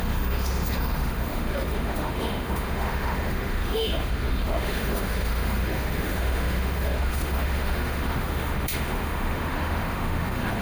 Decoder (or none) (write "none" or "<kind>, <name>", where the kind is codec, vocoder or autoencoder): autoencoder, DAC-VAE